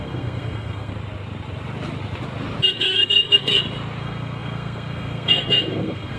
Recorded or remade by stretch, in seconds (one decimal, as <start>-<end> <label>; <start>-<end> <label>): 0.0-0.9 remade; 0.9-2.7 recorded; 2.7-3.5 remade; 3.5-4.0 recorded; 4.0-6.2 remade